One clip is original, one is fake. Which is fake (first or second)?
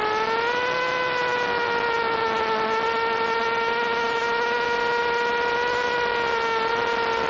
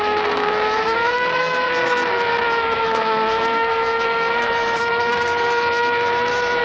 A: second